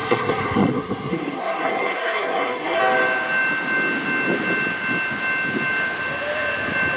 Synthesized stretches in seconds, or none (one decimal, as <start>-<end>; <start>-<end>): 0.0-2.8